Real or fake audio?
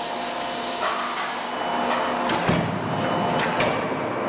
real